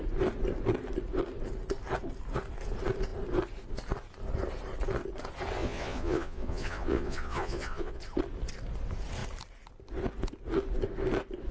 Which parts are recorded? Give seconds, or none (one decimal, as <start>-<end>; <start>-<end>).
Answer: 0.0-5.6; 8.0-11.5